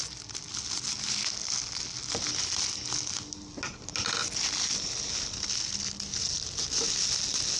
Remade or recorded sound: recorded